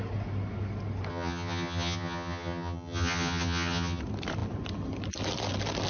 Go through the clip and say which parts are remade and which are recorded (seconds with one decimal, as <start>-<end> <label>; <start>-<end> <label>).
0.0-1.1 recorded; 1.1-4.0 remade; 4.0-5.9 recorded

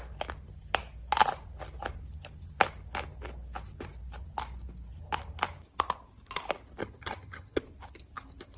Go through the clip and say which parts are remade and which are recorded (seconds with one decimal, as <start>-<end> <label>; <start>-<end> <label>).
0.0-6.8 recorded; 6.8-7.6 remade; 7.6-8.6 recorded